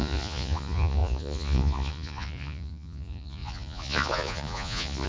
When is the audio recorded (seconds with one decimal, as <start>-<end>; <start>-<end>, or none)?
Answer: none